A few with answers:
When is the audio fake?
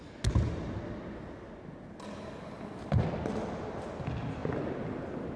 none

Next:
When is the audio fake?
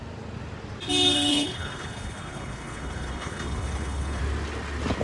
1.3-4.2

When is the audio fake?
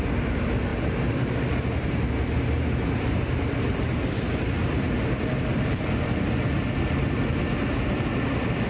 5.5-6.4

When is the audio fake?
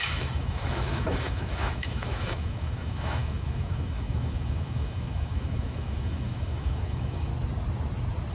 0.0-7.3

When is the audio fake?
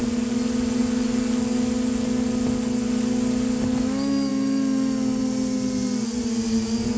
none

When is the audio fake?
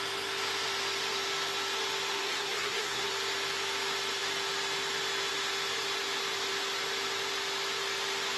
2.1-3.1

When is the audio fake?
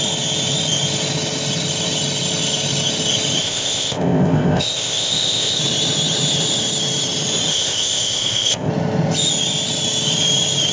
3.4-5.6; 7.5-8.7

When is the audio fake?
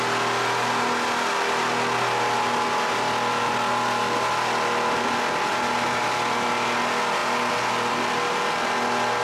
none